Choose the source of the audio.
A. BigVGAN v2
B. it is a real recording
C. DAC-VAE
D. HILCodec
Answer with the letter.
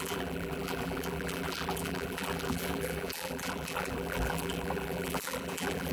A